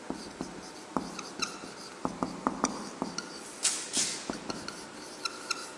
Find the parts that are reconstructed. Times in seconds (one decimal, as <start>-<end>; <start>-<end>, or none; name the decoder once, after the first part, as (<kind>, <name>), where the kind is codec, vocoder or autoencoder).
none